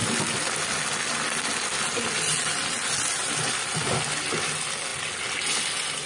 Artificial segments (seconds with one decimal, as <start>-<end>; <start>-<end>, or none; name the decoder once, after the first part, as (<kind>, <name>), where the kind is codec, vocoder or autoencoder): none